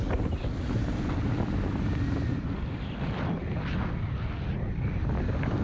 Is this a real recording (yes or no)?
yes